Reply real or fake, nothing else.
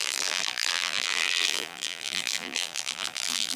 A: fake